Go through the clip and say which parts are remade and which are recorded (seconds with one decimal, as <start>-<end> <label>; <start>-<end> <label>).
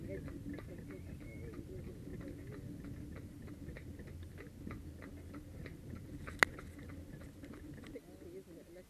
0.0-8.9 recorded